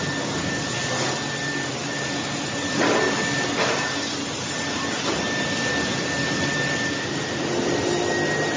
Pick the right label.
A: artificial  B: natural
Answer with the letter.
B